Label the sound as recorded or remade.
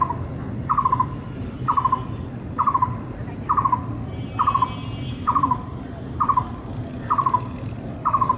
recorded